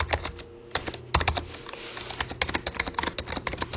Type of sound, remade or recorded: recorded